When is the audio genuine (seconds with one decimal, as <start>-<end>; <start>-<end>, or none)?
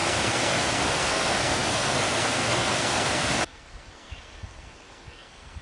none